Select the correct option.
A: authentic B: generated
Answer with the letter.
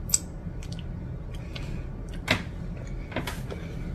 A